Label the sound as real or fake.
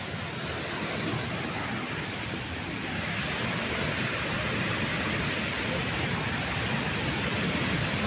real